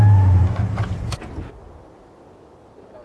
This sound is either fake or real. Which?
real